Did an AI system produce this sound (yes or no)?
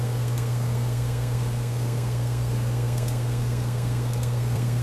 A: yes